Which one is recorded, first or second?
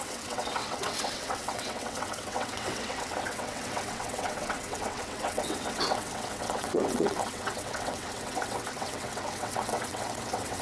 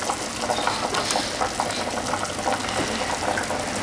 second